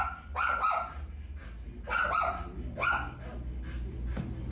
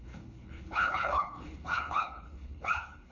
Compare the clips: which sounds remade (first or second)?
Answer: second